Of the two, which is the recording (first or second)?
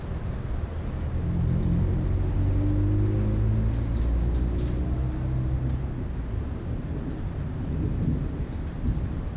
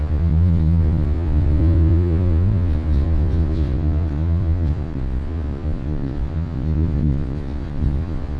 first